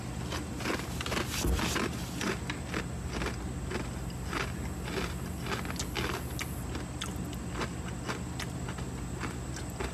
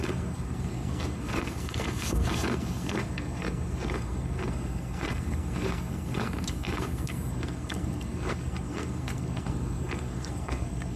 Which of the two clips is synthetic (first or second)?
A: second